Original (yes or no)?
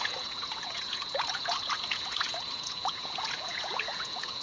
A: no